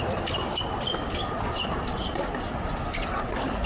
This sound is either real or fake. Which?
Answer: real